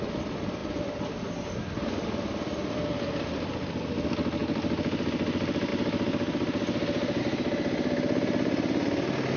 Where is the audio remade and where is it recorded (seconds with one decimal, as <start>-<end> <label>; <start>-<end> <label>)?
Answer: 0.0-4.4 recorded; 4.4-5.1 remade; 5.1-9.4 recorded